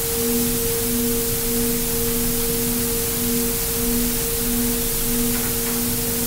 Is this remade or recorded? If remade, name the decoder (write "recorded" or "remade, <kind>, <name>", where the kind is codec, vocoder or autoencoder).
recorded